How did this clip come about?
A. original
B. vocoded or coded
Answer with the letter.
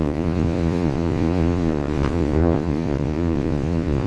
B